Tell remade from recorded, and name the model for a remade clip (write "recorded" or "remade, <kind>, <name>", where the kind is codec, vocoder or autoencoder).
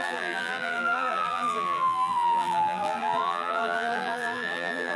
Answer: remade, vocoder, BigVGAN v2